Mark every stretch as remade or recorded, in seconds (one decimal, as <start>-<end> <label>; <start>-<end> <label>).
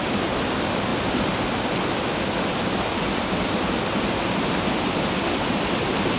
0.0-6.2 recorded